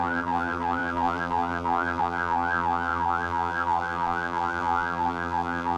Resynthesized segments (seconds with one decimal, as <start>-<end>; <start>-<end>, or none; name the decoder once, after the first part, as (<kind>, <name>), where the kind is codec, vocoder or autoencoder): 0.0-5.8 (vocoder, BigVGAN v2)

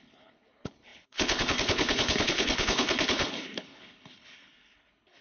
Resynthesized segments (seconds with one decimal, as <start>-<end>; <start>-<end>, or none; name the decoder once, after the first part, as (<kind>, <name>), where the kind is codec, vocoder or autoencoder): 0.0-5.2 (codec, HILCodec)

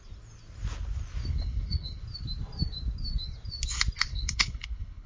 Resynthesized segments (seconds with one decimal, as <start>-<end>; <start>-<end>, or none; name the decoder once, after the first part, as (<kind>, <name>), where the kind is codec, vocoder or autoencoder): 1.3-2.0 (codec, HILCodec); 4.1-5.1

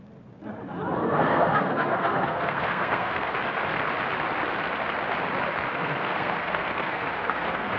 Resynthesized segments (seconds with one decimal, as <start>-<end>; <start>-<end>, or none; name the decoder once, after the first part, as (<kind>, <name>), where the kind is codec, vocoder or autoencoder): 1.0-3.3 (codec, SNAC); 5.7-7.8